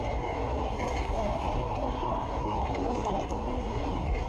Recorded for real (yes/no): no